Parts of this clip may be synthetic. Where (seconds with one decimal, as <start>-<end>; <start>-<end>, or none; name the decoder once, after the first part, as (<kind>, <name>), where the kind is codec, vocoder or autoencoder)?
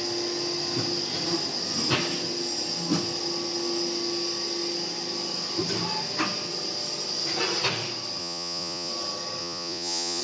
8.2-8.9 (vocoder, Vocos); 9.4-10.2